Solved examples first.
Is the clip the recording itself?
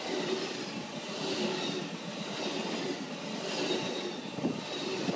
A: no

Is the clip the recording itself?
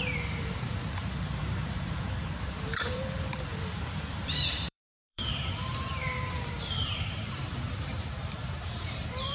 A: no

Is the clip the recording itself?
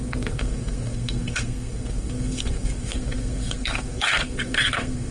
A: no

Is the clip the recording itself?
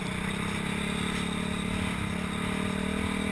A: yes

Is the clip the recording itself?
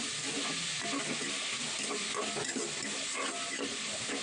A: yes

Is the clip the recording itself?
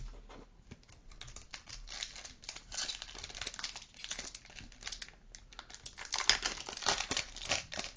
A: yes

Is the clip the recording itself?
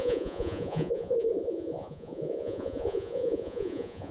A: no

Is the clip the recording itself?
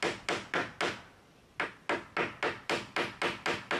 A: yes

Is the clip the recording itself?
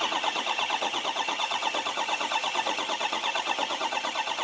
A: no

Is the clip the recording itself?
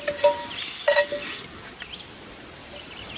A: yes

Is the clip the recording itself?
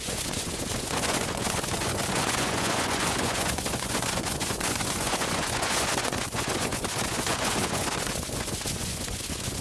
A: no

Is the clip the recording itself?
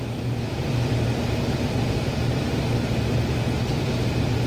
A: yes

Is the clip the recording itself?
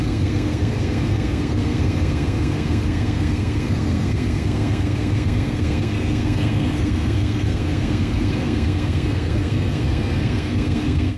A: no